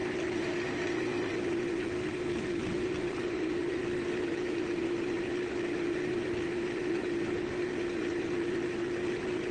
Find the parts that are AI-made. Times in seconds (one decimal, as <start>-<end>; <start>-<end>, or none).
0.0-0.5; 2.1-3.8